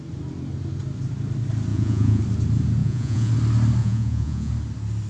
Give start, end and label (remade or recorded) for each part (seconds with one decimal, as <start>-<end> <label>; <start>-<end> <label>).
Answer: 0.0-1.7 recorded; 1.7-2.2 remade; 2.2-2.8 recorded; 2.8-3.3 remade; 3.3-3.8 recorded; 3.8-4.5 remade; 4.5-5.1 recorded